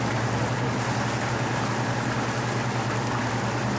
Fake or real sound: real